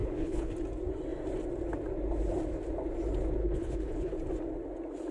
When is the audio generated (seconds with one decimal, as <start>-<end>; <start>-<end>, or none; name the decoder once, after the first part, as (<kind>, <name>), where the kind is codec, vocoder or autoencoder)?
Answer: 0.0-0.5 (codec, HILCodec); 3.4-4.1

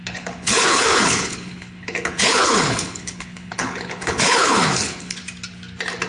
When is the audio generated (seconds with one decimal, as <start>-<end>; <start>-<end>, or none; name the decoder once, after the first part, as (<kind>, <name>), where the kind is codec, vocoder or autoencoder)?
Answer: 0.0-5.2 (codec, HILCodec)